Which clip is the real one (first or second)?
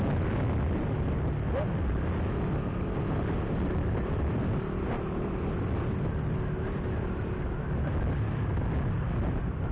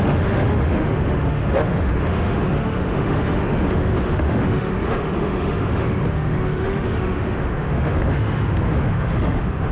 first